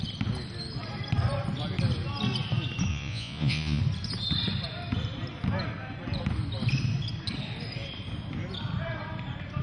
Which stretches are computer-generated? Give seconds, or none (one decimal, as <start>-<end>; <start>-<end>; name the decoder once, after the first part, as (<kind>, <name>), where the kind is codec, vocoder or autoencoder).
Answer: 2.9-3.8 (vocoder, Vocos)